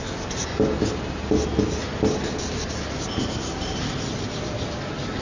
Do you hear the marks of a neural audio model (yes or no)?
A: no